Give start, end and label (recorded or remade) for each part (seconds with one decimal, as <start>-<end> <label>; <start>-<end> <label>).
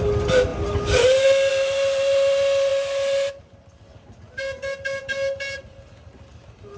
0.0-6.8 recorded